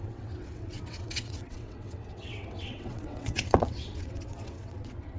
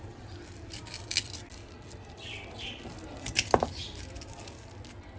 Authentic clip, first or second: second